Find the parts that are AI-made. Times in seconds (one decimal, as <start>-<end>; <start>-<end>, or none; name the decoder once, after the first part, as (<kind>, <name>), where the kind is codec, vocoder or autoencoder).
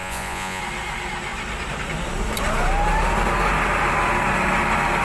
0.0-0.6 (vocoder, Vocos)